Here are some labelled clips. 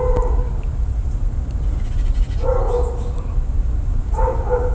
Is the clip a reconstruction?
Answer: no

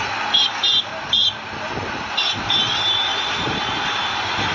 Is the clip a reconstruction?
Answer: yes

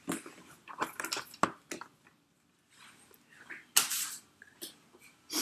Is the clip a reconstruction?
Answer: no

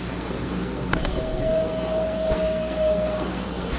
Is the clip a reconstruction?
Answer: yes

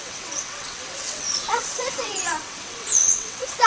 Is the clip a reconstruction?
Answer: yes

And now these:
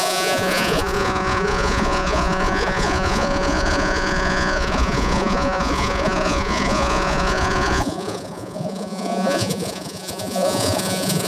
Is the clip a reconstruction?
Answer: yes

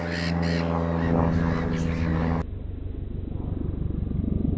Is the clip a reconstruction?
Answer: no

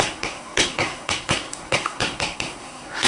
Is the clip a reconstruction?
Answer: yes